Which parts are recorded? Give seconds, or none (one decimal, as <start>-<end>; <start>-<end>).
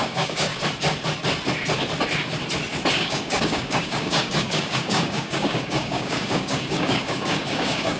0.5-2.9